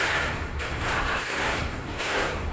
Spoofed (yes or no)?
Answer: yes